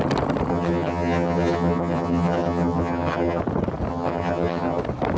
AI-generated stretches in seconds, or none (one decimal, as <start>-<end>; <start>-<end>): 0.5-3.4; 3.9-4.8